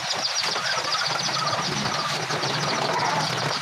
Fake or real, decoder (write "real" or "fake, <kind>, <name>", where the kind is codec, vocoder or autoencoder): real